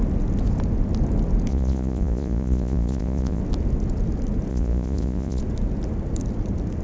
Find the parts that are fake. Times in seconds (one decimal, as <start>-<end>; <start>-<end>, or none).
1.5-3.4; 4.5-5.4

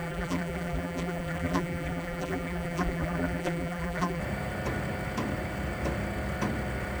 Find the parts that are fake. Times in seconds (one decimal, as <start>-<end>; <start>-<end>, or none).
0.0-4.2

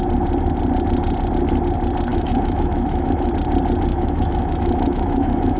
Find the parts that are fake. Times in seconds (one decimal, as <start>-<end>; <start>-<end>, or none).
2.1-3.3; 3.9-5.6